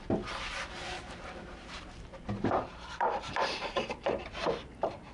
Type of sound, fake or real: fake